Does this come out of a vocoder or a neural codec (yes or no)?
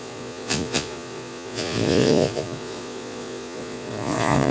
yes